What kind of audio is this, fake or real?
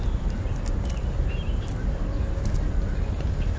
real